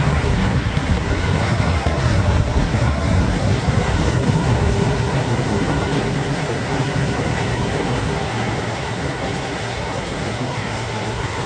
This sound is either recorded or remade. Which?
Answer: remade